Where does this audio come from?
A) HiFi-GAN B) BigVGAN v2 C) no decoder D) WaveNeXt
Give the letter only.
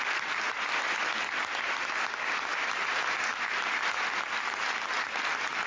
C